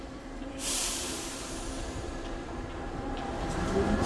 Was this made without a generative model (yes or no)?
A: no